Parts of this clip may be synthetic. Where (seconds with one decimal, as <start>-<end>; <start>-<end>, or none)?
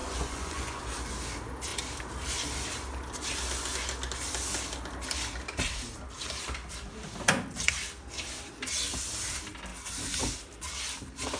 0.0-0.8